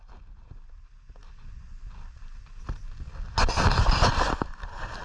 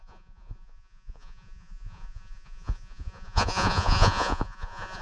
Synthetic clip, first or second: second